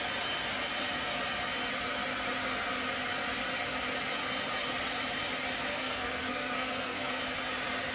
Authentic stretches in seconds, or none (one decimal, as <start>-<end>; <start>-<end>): 0.0-5.7; 7.2-7.9